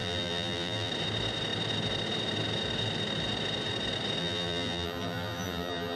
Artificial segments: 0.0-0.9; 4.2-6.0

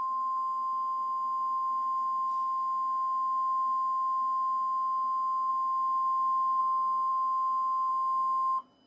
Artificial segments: none

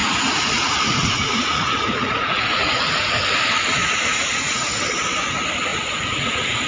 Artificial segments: 0.0-3.1; 3.8-4.8; 5.7-6.7

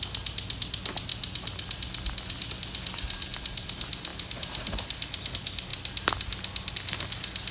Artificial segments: none

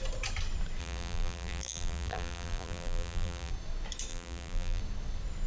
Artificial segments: 0.8-3.5; 4.1-4.8

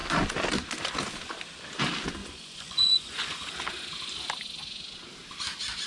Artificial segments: 2.2-3.5